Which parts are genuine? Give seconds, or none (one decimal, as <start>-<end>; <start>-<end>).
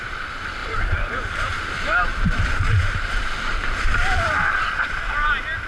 0.0-0.6; 1.7-2.1; 5.1-5.7